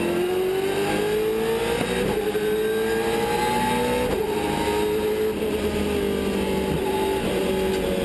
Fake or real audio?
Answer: real